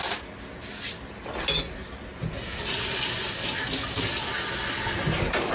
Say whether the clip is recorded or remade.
recorded